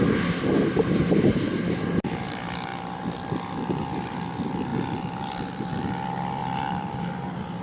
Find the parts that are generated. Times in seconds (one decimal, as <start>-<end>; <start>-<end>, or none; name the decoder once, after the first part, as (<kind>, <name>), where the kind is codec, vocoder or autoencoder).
6.4-7.6 (vocoder, BigVGAN v2)